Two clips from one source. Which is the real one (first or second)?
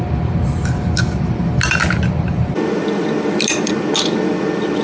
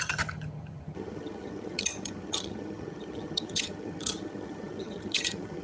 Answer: first